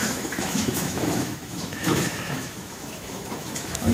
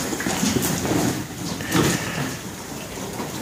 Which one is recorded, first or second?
second